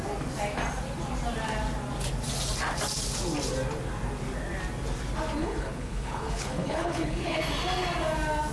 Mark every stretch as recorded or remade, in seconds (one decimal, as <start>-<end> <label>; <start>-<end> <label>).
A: 0.0-5.4 recorded; 5.4-7.4 remade; 7.4-8.5 recorded